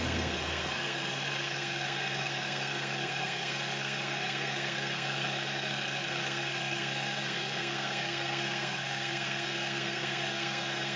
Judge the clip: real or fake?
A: fake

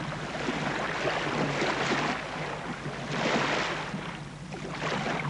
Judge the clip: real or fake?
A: real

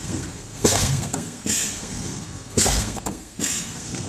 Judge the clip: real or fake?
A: fake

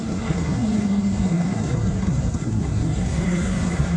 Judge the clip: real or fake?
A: fake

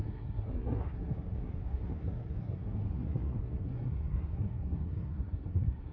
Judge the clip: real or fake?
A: fake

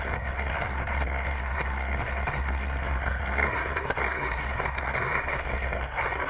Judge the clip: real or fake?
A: fake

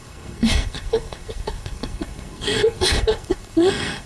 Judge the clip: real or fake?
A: fake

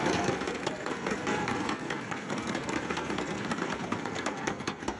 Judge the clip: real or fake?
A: fake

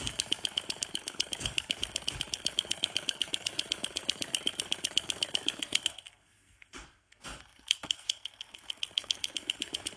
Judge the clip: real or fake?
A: fake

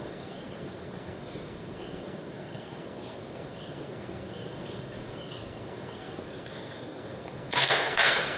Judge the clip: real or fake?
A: fake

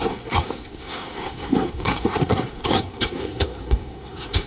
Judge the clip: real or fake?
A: fake